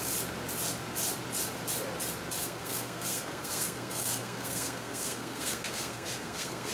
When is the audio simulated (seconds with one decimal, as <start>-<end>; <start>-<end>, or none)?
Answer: 2.4-6.7